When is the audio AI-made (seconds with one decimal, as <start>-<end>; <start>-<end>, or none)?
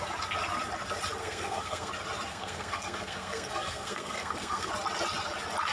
1.2-1.9; 2.3-4.7